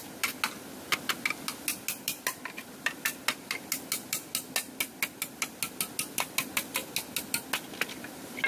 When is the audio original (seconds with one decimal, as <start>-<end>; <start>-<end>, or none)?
0.0-8.5